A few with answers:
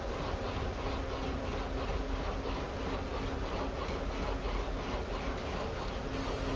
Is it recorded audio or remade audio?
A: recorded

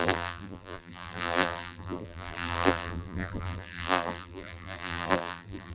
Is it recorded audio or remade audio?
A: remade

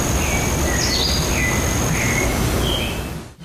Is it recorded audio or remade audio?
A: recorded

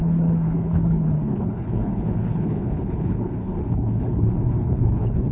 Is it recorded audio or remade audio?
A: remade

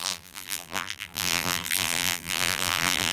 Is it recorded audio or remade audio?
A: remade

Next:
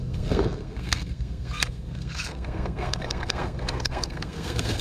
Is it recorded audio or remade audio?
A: remade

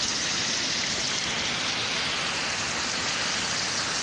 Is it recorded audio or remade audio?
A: recorded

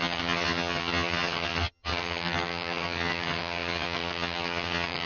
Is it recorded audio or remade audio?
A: remade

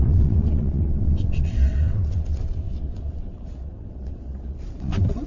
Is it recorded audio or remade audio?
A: remade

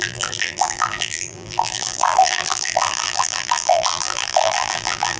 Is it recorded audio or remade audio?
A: remade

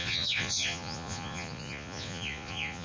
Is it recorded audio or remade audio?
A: remade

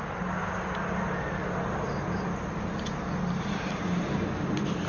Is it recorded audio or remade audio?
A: recorded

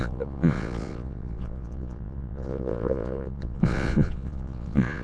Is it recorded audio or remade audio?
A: remade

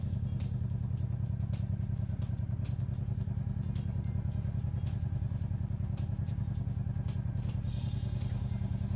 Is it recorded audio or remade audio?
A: recorded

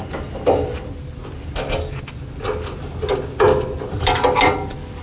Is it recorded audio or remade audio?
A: recorded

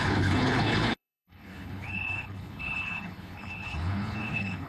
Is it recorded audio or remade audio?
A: remade